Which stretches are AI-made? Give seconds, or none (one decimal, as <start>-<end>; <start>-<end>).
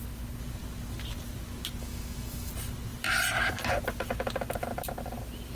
1.8-2.5